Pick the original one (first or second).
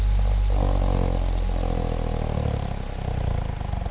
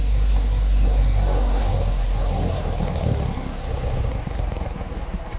first